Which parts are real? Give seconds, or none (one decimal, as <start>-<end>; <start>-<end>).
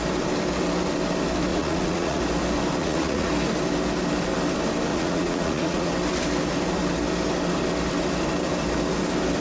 0.0-1.5; 2.2-2.8; 3.3-4.9; 5.9-9.4